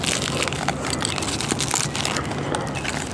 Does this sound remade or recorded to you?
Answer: recorded